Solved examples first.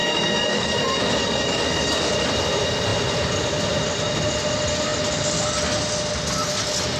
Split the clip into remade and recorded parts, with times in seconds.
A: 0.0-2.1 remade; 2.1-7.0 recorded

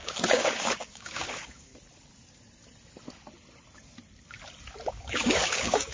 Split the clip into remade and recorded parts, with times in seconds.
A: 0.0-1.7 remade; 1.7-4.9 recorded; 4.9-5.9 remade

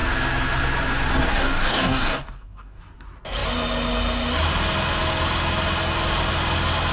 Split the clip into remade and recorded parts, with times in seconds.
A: 0.0-1.3 recorded; 1.3-2.8 remade; 2.8-6.9 recorded

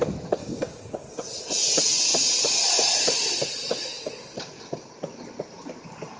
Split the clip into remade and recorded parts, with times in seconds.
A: 0.0-0.4 recorded; 0.4-1.1 remade; 1.1-6.2 recorded

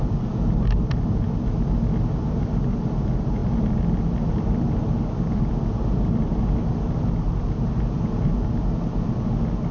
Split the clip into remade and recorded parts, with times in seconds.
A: 0.0-9.7 recorded

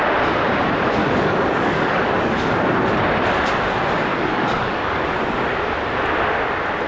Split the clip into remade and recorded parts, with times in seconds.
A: 0.0-1.0 recorded; 1.0-2.3 remade; 2.3-4.1 recorded; 4.1-5.1 remade; 5.1-6.9 recorded

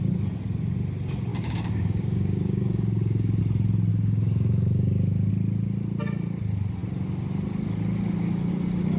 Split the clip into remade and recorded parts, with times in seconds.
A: 0.0-1.3 recorded; 1.3-3.4 remade; 3.4-3.9 recorded; 3.9-5.3 remade; 5.3-9.0 recorded

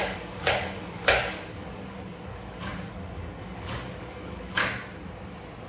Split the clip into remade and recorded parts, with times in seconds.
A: 0.0-4.6 remade; 4.6-5.7 recorded